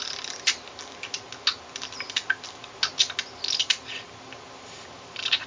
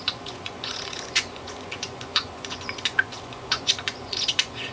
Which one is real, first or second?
first